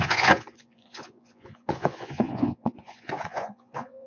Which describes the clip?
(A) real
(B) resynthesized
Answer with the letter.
B